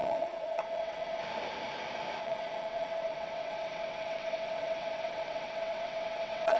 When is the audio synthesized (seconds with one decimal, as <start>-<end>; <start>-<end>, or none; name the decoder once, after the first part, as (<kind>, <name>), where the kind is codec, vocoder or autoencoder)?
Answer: 0.0-1.2 (vocoder, WaveNeXt); 2.2-6.6